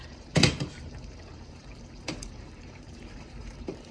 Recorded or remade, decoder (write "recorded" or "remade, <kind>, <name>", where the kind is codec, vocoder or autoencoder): remade, vocoder, BigVGAN v2